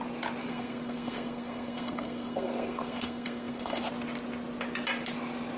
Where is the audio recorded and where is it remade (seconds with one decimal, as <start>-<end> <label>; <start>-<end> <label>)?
0.0-0.4 recorded; 0.4-3.8 remade; 3.8-5.6 recorded